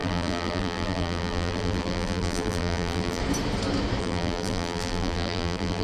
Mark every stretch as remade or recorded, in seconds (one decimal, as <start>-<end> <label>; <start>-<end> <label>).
0.0-3.2 remade; 3.2-4.0 recorded; 4.0-5.8 remade